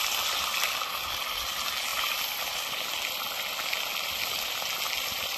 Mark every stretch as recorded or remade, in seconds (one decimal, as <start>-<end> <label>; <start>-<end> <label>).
0.0-5.4 recorded